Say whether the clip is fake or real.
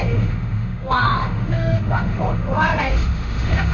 fake